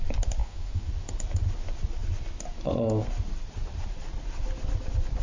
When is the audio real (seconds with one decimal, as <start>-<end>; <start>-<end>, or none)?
0.0-0.4; 0.9-5.2

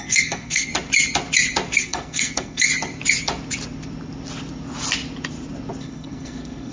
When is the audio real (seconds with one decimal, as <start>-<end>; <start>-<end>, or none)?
0.7-1.8; 2.7-5.8

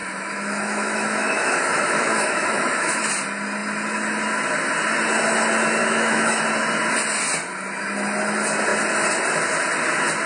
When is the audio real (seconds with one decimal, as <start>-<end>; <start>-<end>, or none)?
3.1-5.8; 6.4-10.3